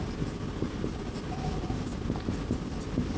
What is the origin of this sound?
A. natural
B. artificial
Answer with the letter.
A